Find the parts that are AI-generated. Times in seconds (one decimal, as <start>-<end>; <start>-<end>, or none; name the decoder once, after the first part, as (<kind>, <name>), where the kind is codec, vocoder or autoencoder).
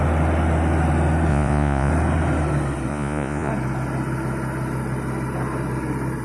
1.3-1.9 (vocoder, Vocos); 2.9-3.5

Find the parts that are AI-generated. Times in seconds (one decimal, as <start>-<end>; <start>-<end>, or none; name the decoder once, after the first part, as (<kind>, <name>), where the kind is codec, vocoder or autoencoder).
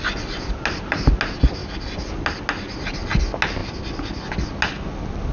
none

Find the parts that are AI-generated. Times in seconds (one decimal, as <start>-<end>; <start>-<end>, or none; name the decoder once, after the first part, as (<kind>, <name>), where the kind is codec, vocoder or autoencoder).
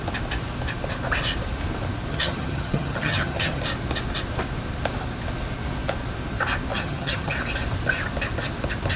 2.1-3.6 (vocoder, HiFi-GAN); 6.7-7.3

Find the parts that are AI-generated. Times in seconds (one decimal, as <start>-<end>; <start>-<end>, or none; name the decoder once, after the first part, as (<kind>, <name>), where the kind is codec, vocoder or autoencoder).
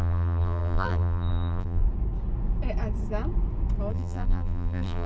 0.0-1.8 (vocoder, BigVGAN v2); 3.9-5.1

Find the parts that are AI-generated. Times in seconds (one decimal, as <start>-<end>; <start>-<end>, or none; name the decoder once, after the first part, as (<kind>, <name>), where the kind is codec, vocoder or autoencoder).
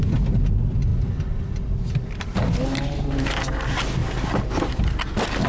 none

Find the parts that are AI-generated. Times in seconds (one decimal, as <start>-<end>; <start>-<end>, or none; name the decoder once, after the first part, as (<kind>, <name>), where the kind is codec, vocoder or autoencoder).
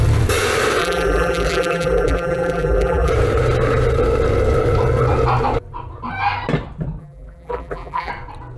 0.8-3.1 (vocoder, BigVGAN v2); 7.0-8.1